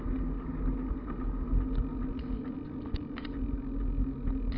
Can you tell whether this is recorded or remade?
recorded